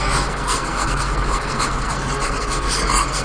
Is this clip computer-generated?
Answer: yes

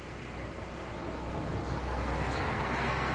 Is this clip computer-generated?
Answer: yes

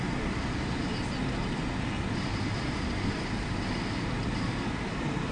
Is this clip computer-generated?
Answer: no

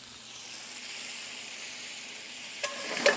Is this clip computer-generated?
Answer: no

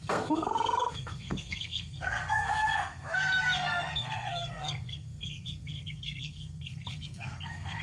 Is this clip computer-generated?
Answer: yes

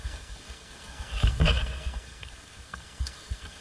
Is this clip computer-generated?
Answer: yes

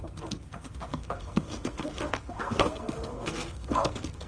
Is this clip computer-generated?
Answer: yes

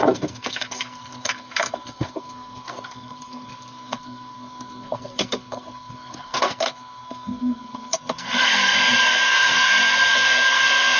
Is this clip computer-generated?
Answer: yes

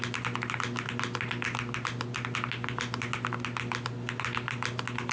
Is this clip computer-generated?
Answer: no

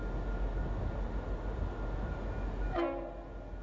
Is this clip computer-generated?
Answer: no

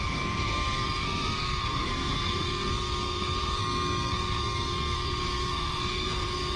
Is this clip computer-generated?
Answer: yes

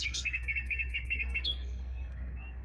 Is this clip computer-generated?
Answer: yes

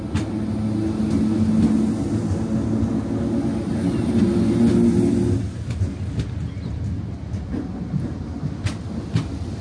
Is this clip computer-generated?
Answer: no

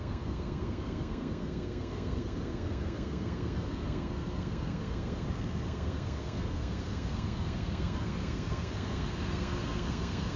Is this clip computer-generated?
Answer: yes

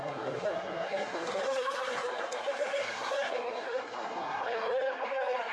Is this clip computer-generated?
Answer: yes